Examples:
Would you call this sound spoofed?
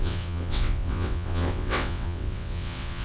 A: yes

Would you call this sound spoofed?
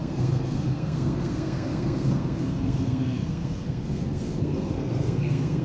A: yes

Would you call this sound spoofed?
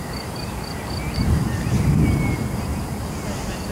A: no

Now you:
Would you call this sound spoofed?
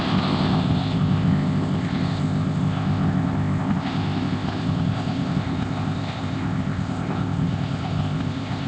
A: yes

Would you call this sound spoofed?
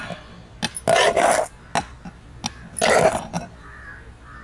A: no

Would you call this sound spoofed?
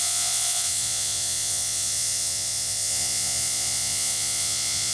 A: yes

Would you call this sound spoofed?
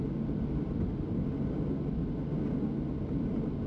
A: no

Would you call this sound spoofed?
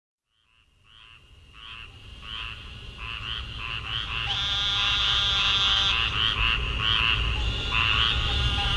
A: no